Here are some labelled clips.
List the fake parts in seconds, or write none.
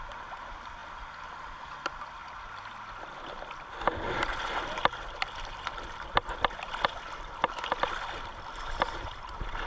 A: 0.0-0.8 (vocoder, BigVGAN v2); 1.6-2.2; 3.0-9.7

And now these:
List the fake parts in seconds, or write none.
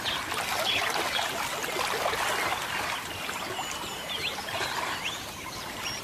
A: 3.9-6.0 (vocoder, BigVGAN v2)